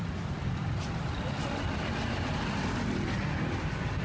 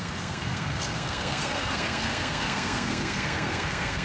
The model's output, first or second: second